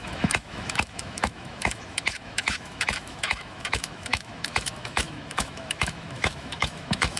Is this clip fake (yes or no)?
yes